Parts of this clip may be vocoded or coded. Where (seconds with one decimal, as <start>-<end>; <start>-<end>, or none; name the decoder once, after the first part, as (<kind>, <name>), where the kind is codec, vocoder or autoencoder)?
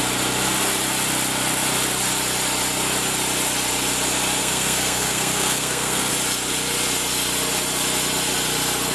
4.4-6.1 (codec, SNAC)